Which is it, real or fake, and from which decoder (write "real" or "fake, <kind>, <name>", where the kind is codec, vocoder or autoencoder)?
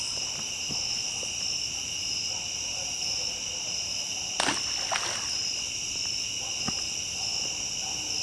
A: real